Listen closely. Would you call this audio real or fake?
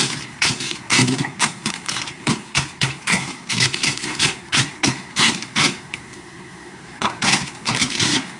fake